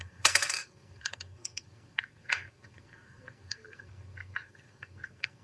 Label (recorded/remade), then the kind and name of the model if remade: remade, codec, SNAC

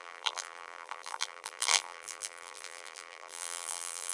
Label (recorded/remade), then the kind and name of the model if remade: remade, vocoder, BigVGAN v2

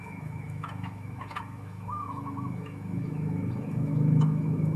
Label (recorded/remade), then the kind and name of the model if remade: remade, autoencoder, DAC-VAE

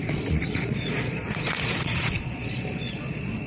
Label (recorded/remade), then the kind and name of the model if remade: remade, vocoder, Vocos